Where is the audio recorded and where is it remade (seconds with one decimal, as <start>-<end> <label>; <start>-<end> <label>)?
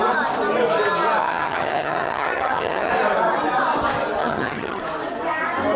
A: 0.0-1.2 recorded; 1.2-2.9 remade; 2.9-4.2 recorded; 4.2-4.8 remade; 4.8-5.8 recorded